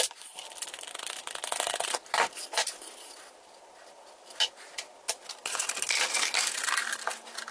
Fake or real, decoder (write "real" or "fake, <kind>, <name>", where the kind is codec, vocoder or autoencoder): real